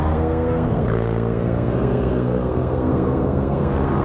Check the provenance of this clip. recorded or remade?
remade